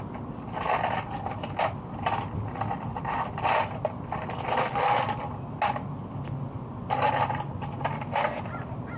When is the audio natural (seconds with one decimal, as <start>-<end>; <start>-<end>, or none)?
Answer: 0.0-2.9; 3.7-9.0

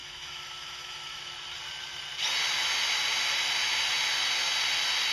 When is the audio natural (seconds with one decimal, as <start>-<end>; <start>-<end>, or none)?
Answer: 1.2-5.1